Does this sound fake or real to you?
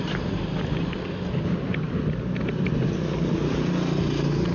real